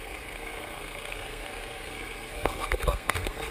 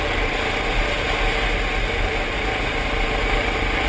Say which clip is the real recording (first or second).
second